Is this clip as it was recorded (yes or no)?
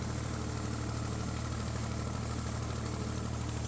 yes